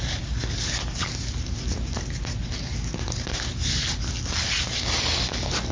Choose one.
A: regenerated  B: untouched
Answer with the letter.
B